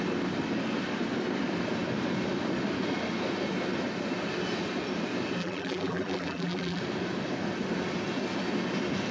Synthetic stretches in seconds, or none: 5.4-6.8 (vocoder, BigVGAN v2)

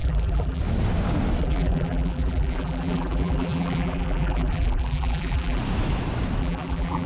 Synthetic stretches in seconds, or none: 0.0-0.6 (vocoder, BigVGAN v2); 1.4-5.6; 6.4-7.1

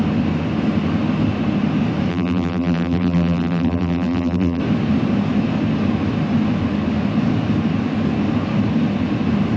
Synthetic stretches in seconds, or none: 2.1-4.6 (vocoder, BigVGAN v2)